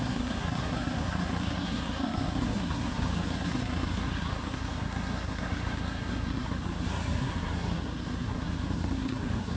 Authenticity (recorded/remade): remade